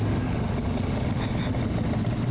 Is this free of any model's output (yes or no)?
yes